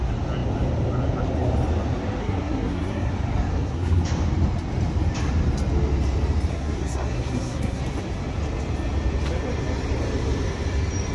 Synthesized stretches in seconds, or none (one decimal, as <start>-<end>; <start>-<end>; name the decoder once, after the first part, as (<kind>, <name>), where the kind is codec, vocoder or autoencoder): 2.2-3.1 (codec, SNAC); 3.5-4.0; 6.5-7.8